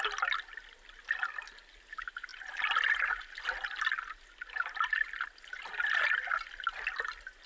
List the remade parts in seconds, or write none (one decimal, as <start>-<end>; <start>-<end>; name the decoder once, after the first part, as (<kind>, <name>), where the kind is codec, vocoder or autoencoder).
none